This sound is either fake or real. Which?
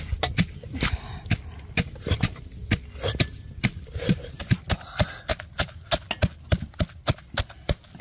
real